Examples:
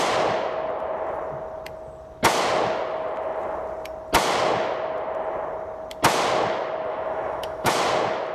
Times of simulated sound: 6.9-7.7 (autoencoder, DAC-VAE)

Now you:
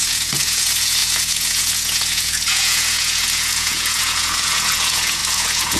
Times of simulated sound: 0.0-5.8 (vocoder, Vocos)

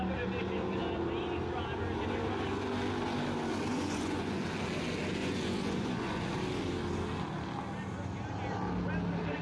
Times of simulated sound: 3.7-4.4 (vocoder, Vocos); 5.2-6.2

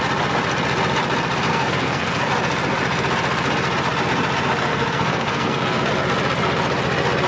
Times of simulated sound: 1.5-2.3 (codec, SNAC); 4.7-5.9

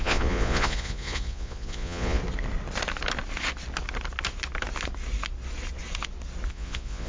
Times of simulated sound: 0.0-2.2 (vocoder, Vocos); 6.5-7.1

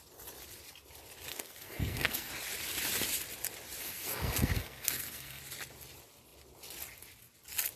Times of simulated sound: 1.3-2.3 (codec, SNAC); 3.8-5.4

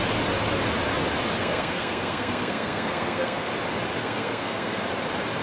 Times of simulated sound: 1.4-3.5 (codec, SNAC); 4.0-4.8

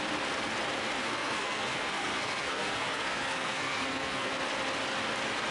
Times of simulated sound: 1.0-4.3 (codec, SNAC)